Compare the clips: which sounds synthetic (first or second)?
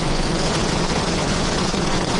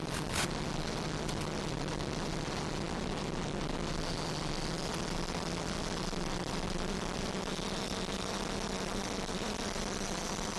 first